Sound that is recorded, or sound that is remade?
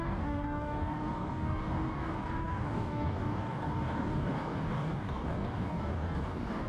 remade